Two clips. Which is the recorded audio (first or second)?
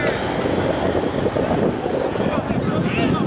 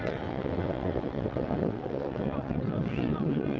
first